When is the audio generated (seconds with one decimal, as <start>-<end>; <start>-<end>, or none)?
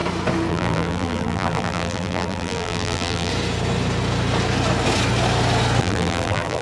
0.5-3.3; 5.8-6.6